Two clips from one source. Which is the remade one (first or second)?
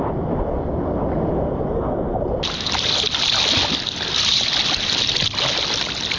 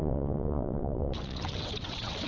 second